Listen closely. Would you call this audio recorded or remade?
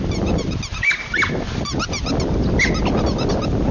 recorded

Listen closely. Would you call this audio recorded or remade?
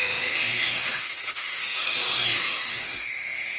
remade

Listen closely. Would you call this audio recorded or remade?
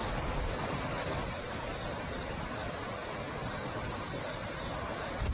recorded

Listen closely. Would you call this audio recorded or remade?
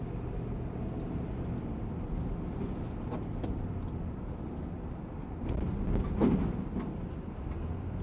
recorded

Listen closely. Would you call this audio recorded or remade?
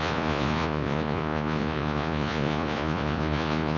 remade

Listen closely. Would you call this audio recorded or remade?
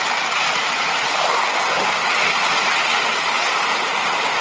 recorded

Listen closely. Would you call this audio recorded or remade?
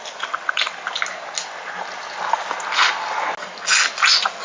recorded